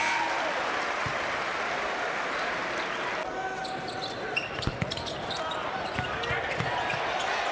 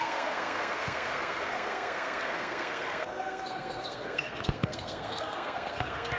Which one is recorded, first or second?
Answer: first